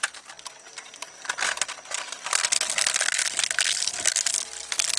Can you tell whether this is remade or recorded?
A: recorded